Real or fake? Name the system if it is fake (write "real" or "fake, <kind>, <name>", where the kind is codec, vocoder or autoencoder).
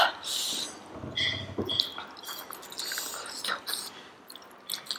real